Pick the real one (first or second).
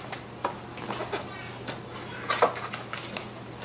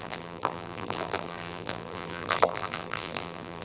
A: first